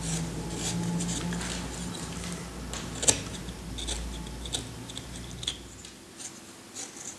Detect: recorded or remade recorded